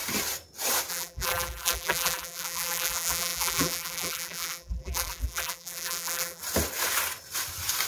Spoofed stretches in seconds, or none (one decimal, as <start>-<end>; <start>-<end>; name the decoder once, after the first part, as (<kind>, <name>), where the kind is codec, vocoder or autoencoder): 0.9-6.4 (vocoder, BigVGAN v2)